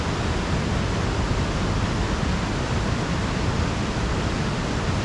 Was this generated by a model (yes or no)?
no